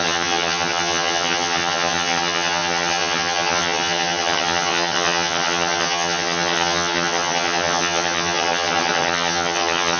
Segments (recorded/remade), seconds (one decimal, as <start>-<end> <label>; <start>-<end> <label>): 0.0-10.0 remade